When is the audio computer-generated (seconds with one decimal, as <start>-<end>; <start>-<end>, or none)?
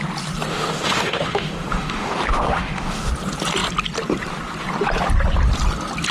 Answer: 0.5-3.1